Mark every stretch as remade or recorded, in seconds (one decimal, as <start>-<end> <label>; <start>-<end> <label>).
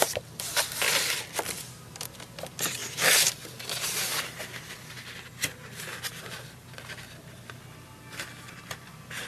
0.0-9.3 recorded